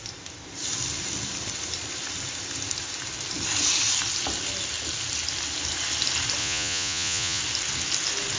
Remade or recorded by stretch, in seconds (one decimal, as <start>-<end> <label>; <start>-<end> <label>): 0.0-6.4 recorded; 6.4-7.4 remade; 7.4-8.4 recorded